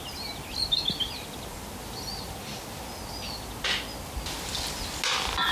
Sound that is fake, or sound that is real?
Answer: real